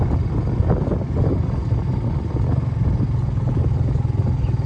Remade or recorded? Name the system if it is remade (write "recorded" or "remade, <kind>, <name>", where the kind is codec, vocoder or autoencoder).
recorded